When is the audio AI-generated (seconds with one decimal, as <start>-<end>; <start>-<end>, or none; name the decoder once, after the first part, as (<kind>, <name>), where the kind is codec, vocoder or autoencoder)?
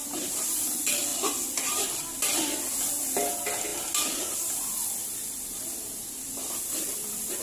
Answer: 0.0-0.6 (vocoder, BigVGAN v2); 1.1-3.3; 3.7-6.6